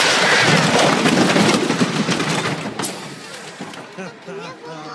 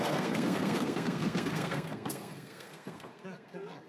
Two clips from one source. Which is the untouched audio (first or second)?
first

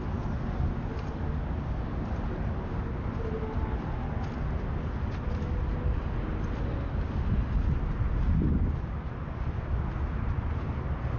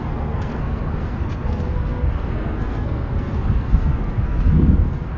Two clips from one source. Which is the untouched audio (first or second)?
first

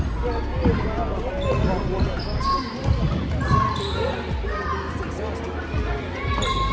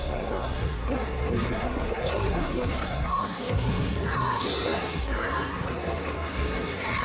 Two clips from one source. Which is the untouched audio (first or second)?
first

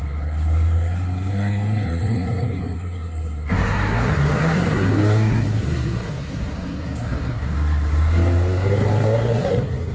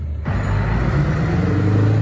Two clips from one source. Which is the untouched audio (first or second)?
second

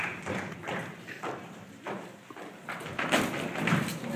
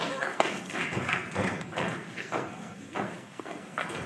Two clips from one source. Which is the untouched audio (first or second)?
first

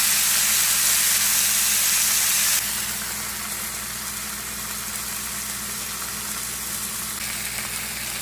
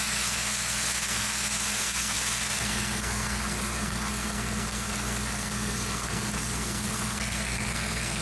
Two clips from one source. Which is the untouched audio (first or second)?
first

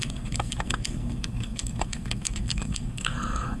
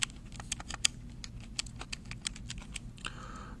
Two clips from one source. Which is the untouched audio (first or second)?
second